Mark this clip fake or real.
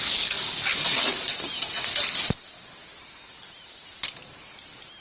real